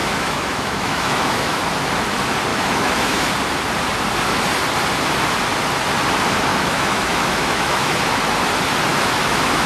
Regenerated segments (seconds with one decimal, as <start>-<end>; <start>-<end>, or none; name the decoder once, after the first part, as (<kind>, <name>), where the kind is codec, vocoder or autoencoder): 0.0-1.6 (autoencoder, DAC-VAE); 2.5-3.3; 6.5-8.0; 8.9-9.7